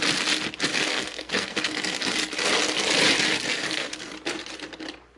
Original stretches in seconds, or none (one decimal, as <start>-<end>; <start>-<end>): 0.0-0.7; 2.0-3.5; 4.1-5.2